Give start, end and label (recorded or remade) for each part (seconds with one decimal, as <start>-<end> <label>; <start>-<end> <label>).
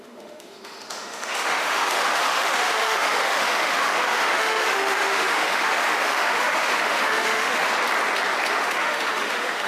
0.0-7.7 remade; 7.7-8.5 recorded; 8.5-9.7 remade